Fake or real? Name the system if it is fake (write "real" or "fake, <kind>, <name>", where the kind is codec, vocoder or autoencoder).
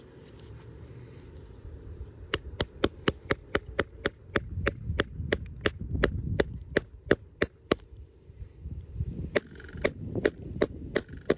real